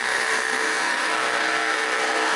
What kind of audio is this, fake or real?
fake